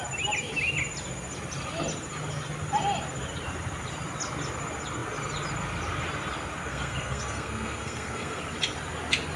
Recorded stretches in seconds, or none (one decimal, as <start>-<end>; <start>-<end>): 0.0-6.6; 8.4-9.4